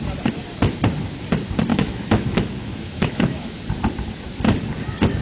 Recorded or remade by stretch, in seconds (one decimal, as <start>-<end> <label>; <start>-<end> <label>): 0.0-1.7 recorded; 1.7-3.6 remade; 3.6-5.2 recorded